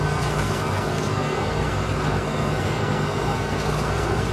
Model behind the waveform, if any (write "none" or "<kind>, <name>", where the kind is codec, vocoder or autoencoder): codec, SNAC